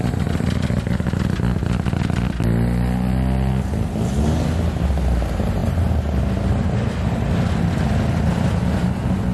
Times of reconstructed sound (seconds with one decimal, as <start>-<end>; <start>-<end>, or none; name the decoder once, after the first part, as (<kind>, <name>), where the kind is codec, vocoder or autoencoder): none